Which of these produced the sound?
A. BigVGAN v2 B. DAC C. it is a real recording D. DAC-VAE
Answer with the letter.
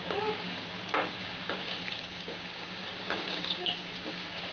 B